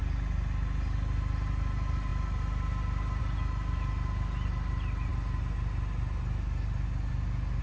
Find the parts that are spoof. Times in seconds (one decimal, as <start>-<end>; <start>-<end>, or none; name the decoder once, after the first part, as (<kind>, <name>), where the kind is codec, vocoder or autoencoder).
none